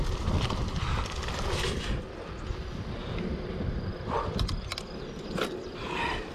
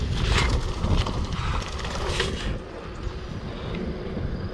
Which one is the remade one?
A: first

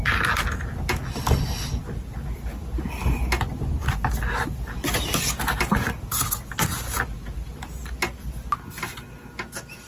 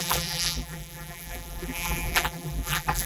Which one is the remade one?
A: second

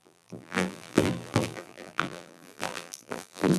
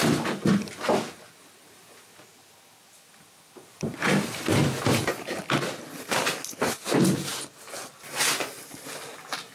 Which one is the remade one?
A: first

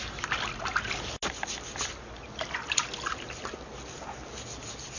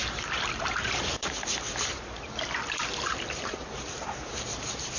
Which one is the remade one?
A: second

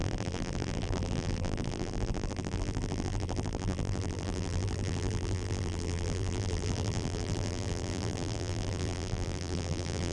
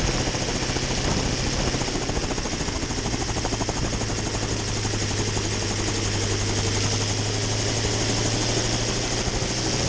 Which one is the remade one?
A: first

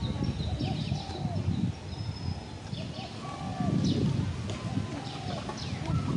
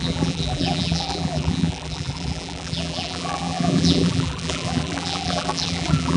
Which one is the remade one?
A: second